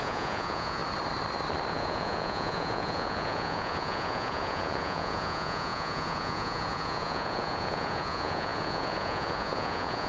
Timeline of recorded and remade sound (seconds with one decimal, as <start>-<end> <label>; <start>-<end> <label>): 0.0-0.8 remade; 0.8-1.7 recorded; 1.7-10.1 remade